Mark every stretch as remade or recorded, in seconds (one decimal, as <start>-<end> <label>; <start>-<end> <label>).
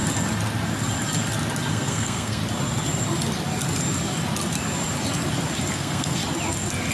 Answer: 0.0-1.7 recorded; 1.7-2.4 remade; 2.4-5.7 recorded; 5.7-6.2 remade; 6.2-6.9 recorded